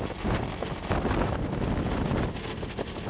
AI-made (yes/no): no